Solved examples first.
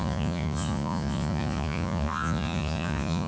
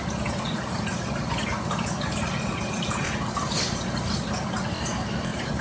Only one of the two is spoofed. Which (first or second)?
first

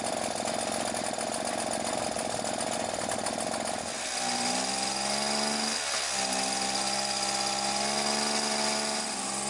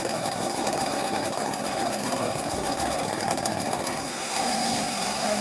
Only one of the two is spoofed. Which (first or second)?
second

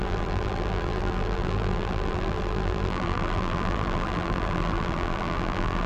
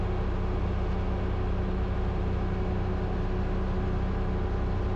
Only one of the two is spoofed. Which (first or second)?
first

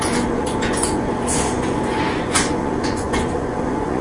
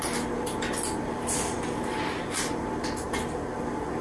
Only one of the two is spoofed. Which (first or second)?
first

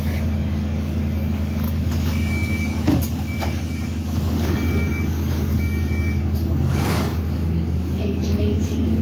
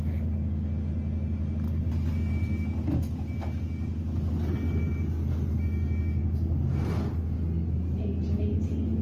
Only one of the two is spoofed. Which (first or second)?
first